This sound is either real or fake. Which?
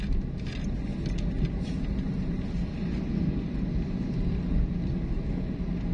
real